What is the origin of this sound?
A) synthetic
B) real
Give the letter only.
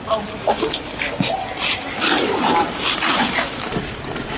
B